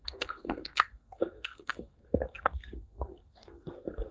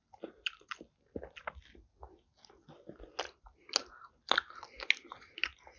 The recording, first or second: second